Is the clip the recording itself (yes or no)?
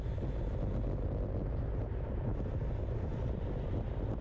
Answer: yes